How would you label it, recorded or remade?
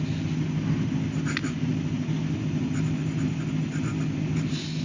recorded